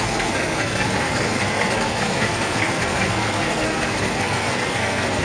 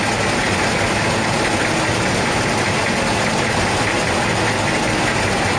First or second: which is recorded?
second